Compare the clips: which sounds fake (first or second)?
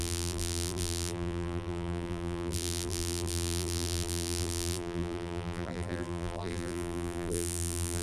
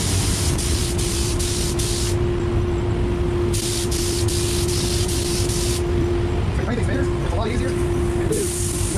first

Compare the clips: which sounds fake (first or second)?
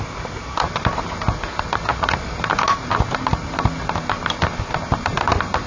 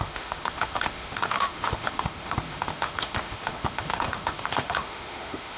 second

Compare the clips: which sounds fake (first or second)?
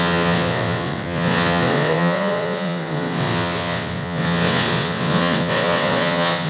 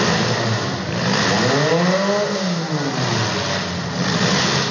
first